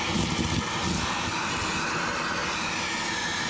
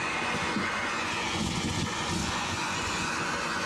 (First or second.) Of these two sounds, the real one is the first